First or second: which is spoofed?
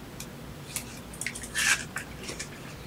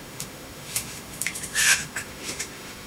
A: second